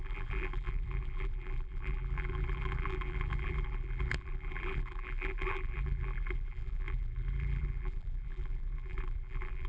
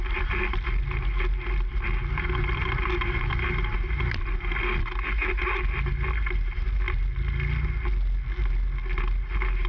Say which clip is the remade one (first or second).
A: first